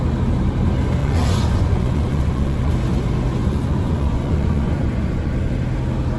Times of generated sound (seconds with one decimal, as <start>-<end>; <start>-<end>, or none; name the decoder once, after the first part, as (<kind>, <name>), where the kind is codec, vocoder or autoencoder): 1.0-2.7 (vocoder, Vocos); 3.4-5.5